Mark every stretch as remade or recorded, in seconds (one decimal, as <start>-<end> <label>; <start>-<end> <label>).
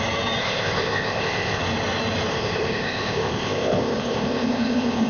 0.0-0.4 recorded; 0.4-1.6 remade; 1.6-2.3 recorded; 2.3-5.1 remade